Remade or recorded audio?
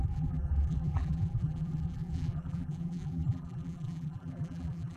remade